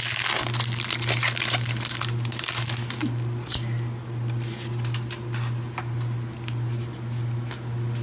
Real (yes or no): yes